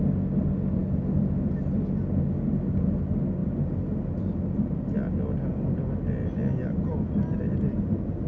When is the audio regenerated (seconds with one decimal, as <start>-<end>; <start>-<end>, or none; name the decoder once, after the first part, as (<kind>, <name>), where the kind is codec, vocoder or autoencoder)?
none

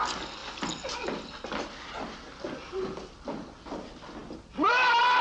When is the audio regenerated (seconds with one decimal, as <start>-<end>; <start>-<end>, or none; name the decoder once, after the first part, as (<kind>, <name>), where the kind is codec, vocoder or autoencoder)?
none

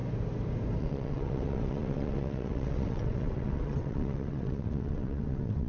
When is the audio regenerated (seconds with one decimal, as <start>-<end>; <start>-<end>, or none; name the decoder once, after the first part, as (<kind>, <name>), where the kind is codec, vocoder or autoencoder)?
0.8-5.7 (vocoder, WaveNeXt)

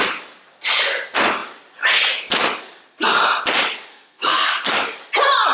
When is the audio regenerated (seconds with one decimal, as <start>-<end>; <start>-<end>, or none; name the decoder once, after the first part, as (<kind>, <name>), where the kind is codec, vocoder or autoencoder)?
3.9-4.5 (codec, SNAC)